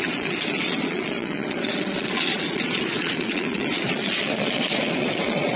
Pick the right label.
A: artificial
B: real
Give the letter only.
A